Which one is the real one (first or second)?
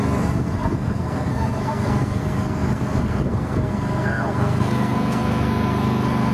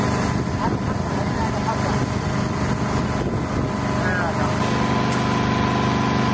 second